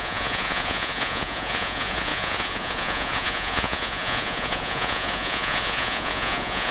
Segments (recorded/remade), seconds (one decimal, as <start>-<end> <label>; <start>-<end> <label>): 0.0-6.7 remade